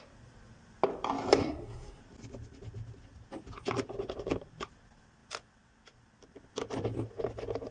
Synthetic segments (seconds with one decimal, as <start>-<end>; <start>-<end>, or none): 1.4-2.0